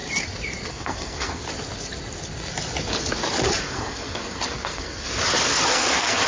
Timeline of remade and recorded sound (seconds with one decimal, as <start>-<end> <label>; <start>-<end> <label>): 0.0-0.7 recorded; 0.7-1.4 remade; 1.4-3.6 recorded; 3.6-5.1 remade; 5.1-5.7 recorded; 5.7-6.3 remade